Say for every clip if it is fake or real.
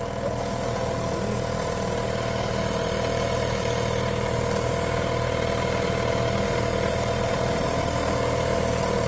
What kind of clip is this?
real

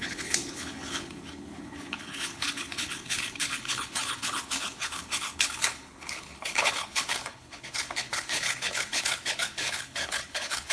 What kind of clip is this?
fake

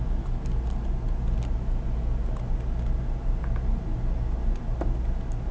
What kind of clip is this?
real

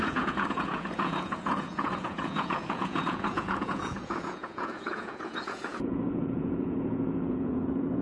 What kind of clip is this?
fake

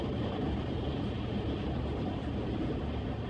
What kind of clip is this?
real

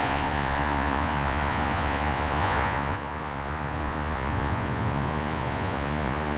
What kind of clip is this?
fake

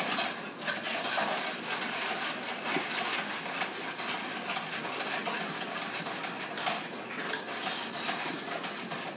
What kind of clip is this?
real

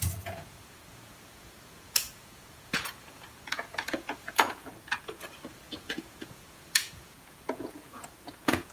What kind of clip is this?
fake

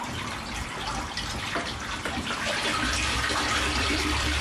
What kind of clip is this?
fake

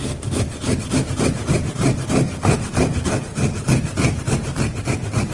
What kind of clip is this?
real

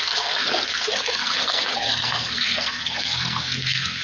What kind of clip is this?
fake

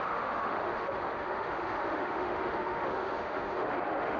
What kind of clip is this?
fake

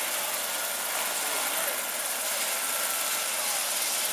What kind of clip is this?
fake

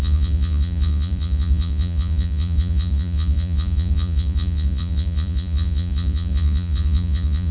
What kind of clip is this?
fake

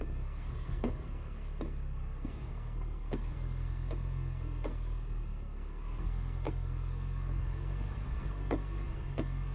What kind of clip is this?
fake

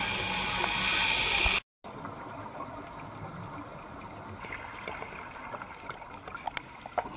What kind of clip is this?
real